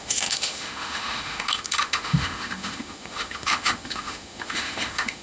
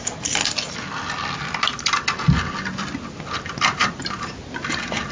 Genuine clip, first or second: second